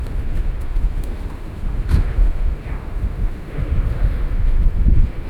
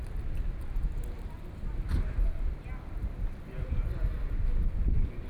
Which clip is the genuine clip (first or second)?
second